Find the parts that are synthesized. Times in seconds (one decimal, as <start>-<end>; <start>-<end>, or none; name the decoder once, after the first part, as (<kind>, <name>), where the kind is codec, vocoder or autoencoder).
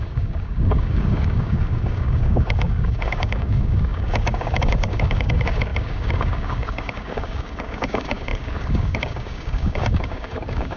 0.0-10.8 (codec, DAC)